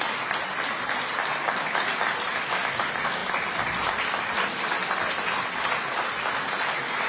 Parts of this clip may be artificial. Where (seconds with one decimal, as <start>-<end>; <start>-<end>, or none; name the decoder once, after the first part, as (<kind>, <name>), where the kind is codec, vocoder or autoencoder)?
1.4-2.3 (vocoder, BigVGAN v2)